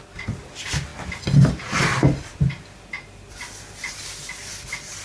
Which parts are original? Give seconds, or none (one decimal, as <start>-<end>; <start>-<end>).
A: 0.0-5.0